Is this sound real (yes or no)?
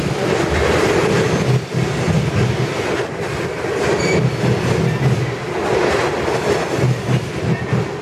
yes